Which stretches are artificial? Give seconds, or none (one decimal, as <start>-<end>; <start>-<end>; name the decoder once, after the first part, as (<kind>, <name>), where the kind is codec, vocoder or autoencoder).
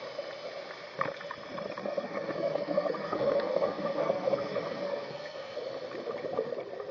1.8-5.6 (codec, SNAC)